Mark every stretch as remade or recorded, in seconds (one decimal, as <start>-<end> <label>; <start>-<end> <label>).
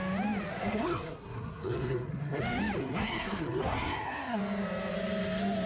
0.0-0.5 recorded; 0.5-2.4 remade; 2.4-2.8 recorded; 2.8-4.4 remade; 4.4-5.7 recorded